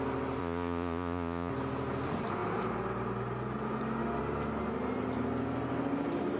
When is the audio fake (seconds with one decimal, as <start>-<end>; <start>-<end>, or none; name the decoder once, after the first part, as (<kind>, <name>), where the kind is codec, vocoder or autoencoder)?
0.4-1.5 (vocoder, Vocos)